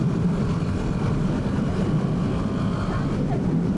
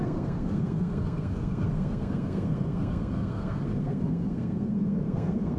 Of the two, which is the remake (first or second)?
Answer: second